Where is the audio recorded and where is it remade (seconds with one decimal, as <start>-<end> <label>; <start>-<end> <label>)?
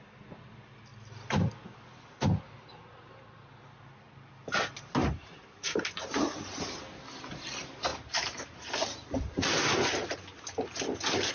0.0-5.0 recorded; 5.0-6.6 remade; 6.6-11.3 recorded